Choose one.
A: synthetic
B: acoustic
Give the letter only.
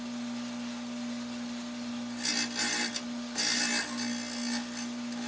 B